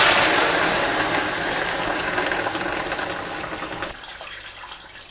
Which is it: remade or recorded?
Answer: recorded